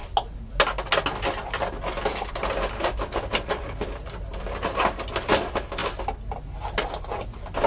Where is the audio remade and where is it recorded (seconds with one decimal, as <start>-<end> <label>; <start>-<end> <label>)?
0.0-7.7 recorded